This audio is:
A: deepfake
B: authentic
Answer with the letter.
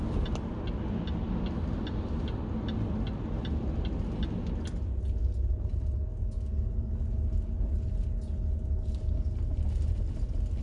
B